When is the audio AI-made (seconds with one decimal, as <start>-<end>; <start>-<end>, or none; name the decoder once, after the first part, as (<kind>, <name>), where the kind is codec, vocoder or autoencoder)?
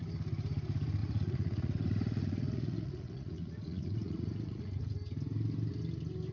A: 1.0-4.8 (vocoder, Vocos)